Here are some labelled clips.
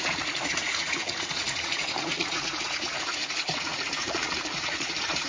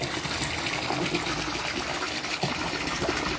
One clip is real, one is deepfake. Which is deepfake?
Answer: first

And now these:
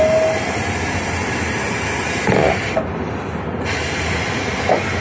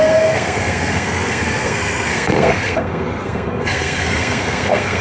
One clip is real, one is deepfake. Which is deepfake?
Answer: second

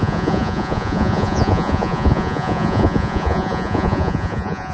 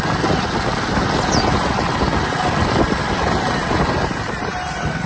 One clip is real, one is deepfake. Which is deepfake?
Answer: first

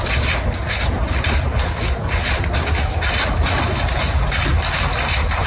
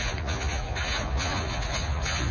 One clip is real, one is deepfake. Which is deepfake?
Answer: second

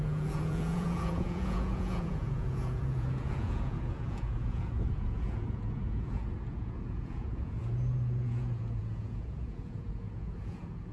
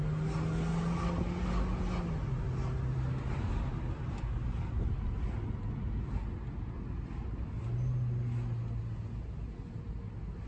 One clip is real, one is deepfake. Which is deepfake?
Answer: first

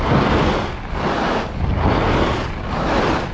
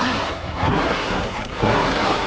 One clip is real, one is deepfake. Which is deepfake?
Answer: second